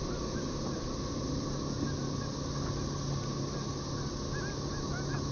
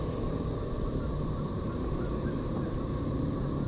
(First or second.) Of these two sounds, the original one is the first